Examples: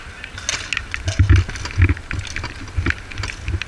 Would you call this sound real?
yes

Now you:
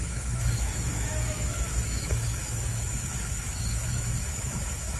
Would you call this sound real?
no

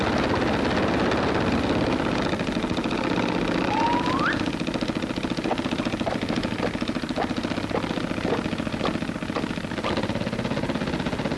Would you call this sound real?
yes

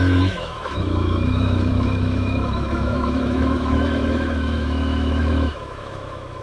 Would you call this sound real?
no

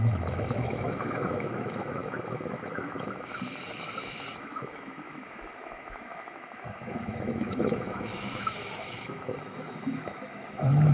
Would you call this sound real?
no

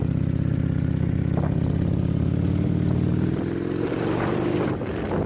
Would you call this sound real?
yes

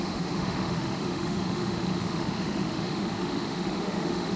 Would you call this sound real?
no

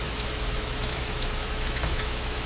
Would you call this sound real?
no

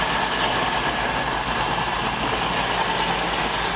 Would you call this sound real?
yes